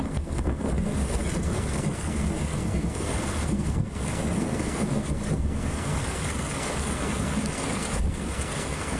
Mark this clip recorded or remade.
remade